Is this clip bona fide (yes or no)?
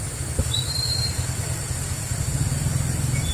yes